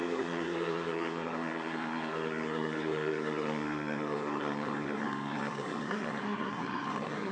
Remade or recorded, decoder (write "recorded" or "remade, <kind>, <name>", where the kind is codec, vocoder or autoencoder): remade, codec, SNAC